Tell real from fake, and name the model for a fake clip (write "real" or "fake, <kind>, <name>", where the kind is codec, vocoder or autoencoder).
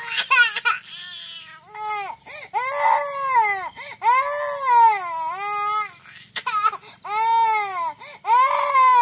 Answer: real